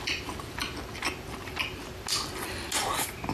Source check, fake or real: real